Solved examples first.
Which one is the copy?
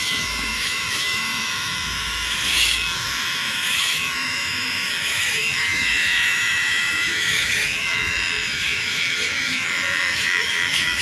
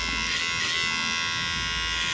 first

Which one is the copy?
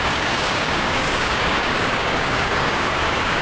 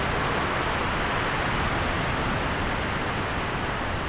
first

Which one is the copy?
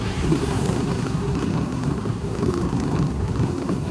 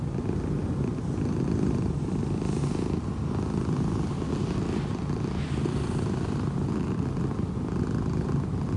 first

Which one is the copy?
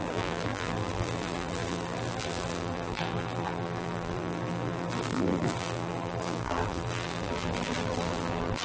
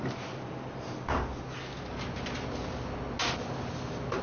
first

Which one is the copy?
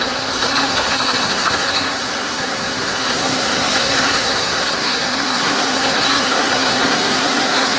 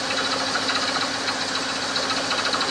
first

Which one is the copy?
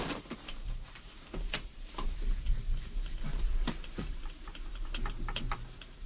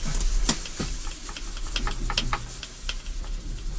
first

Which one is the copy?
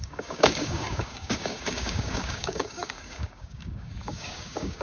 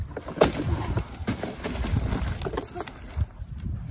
first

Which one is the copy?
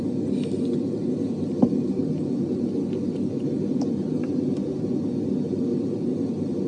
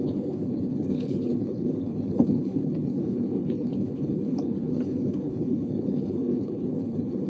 second